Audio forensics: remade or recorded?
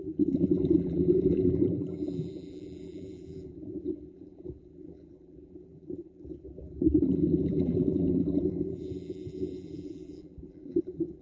remade